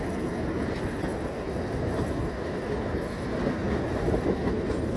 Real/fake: real